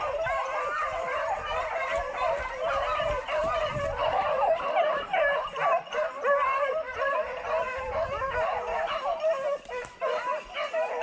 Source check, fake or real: real